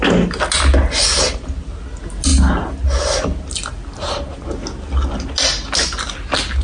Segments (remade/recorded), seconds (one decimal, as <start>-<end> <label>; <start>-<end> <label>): 0.0-6.6 recorded